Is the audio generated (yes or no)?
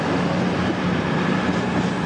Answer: no